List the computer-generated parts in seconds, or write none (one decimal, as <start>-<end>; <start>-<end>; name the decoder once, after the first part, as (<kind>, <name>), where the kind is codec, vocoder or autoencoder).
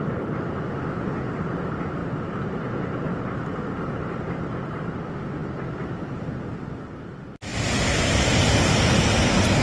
7.5-8.3 (vocoder, BigVGAN v2)